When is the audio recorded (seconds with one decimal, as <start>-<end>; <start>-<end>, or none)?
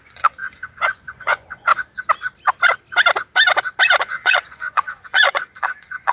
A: 1.7-4.0